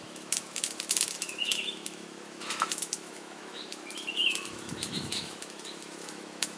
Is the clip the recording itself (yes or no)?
no